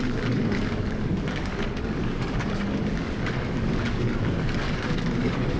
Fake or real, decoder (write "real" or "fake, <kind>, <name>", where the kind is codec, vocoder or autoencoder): fake, codec, DAC